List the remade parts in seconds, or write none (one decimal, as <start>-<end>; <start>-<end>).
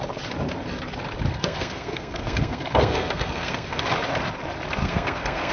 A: 1.3-3.8; 4.8-5.5